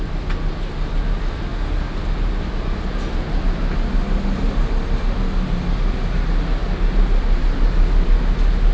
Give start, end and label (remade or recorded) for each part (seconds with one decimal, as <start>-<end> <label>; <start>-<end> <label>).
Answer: 0.0-8.7 recorded